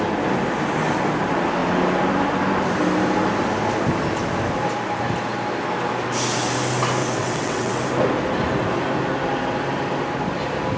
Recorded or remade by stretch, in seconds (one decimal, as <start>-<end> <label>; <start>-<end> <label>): 0.0-7.0 recorded; 7.0-7.8 remade; 7.8-10.8 recorded